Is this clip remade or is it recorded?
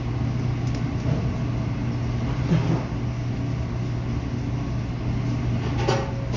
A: recorded